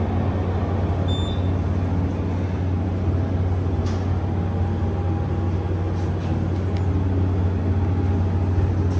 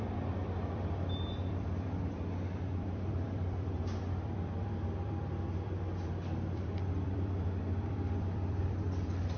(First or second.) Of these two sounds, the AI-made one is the second